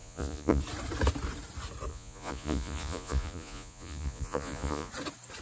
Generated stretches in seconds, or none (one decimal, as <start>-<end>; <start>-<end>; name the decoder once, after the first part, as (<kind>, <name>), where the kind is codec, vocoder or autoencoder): 0.0-0.6 (vocoder, Vocos); 1.9-4.9

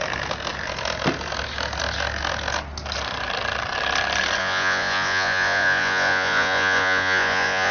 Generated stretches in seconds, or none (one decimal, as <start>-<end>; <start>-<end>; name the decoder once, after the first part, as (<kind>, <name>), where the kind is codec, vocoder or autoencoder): 4.4-7.7 (vocoder, Vocos)

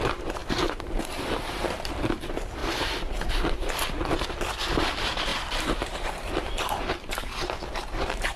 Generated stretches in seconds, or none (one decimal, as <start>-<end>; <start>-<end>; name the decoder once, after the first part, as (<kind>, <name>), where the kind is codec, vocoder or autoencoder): 0.0-8.4 (vocoder, BigVGAN v2)

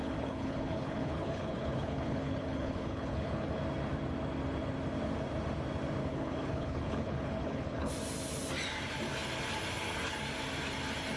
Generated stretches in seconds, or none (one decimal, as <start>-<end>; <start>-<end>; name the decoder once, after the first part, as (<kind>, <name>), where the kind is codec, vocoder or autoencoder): 0.0-3.6 (codec, HILCodec); 6.0-7.9

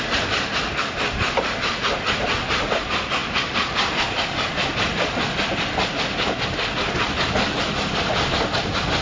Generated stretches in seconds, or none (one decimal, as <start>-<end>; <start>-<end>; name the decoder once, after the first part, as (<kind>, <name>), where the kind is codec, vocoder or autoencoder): none